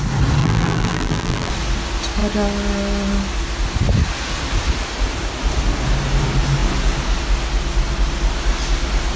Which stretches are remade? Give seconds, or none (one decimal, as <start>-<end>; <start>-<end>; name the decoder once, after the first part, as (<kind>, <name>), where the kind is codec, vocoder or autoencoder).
0.4-1.5 (vocoder, BigVGAN v2)